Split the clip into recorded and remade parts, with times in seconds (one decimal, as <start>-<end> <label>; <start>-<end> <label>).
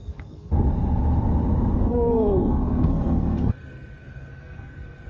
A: 0.0-0.5 remade; 0.5-1.8 recorded; 1.8-5.1 remade